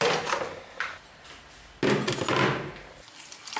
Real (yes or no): yes